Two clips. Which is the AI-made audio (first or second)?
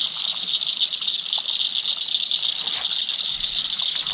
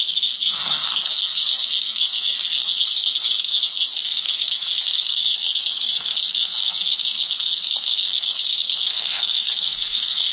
second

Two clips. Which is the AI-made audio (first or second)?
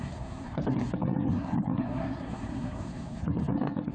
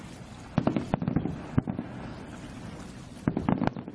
first